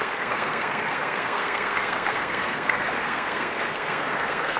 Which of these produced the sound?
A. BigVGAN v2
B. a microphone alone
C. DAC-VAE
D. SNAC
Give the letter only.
D